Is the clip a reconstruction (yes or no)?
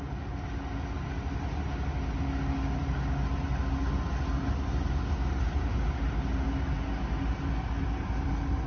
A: no